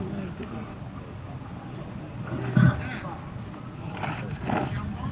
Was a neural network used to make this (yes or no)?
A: no